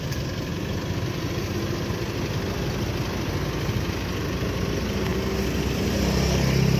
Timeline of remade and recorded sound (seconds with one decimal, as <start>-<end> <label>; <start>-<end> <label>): 0.0-6.8 recorded